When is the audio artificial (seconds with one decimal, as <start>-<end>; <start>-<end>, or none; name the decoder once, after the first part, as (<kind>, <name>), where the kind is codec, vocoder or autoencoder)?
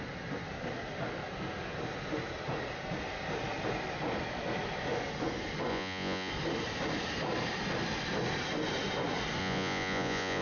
5.7-6.3 (vocoder, Vocos); 9.4-10.4